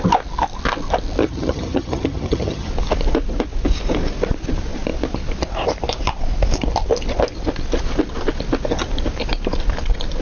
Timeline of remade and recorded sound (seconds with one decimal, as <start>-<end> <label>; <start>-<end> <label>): 0.0-1.2 recorded; 1.2-2.7 remade; 2.7-10.2 recorded